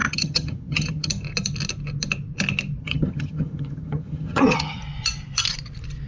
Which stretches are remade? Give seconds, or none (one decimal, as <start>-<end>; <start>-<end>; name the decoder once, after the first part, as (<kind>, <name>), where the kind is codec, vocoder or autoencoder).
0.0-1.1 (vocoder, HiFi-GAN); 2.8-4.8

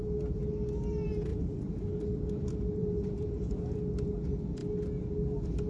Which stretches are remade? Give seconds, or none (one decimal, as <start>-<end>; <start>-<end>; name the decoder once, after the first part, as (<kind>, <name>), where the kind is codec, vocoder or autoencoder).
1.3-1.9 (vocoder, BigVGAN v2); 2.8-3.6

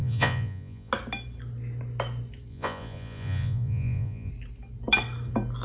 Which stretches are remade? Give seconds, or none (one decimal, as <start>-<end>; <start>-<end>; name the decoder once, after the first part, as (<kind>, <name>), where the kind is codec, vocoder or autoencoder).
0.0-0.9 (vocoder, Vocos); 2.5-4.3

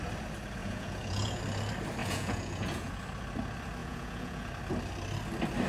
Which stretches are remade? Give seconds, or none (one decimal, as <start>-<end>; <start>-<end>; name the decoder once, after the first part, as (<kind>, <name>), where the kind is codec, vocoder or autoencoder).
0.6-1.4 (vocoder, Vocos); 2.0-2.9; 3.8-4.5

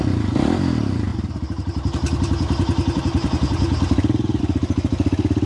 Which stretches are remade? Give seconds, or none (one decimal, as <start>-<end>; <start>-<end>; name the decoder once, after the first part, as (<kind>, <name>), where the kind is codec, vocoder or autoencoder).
none